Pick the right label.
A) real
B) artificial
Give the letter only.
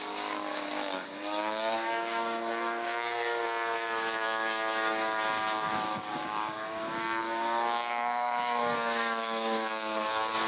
B